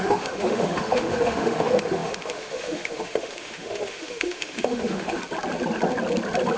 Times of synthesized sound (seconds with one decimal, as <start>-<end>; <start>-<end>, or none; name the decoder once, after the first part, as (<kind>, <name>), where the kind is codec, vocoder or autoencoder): 0.0-5.2 (autoencoder, DAC-VAE)